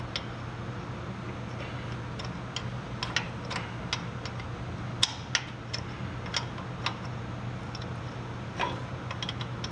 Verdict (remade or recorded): recorded